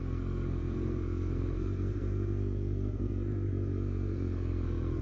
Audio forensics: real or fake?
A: fake